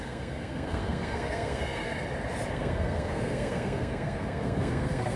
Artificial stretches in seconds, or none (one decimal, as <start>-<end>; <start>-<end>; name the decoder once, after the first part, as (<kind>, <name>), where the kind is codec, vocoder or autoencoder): 0.0-1.9 (codec, SNAC); 2.5-5.2